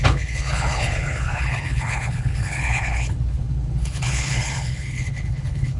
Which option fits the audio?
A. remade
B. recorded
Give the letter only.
A